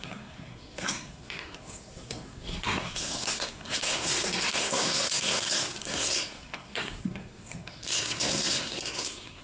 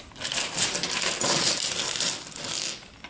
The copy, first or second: first